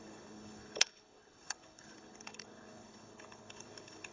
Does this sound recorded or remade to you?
remade